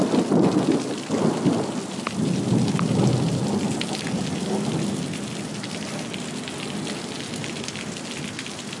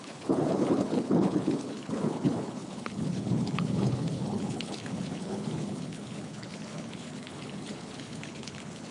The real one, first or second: first